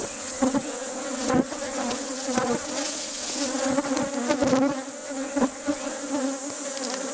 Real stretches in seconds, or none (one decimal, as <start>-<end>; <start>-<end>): 4.0-5.0; 6.1-7.1